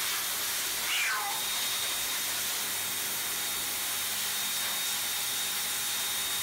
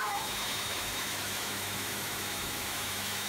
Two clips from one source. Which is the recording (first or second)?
first